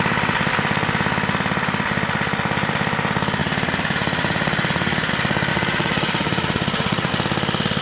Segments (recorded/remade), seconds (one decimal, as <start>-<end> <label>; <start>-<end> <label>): 0.0-3.4 recorded; 3.4-5.1 remade; 5.1-5.5 recorded; 5.5-7.1 remade; 7.1-7.8 recorded